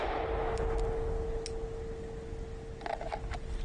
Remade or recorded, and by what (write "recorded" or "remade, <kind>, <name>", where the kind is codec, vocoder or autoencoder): recorded